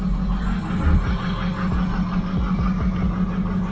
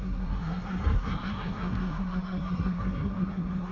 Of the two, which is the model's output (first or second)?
second